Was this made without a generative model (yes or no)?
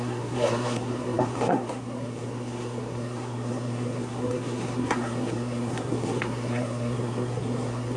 no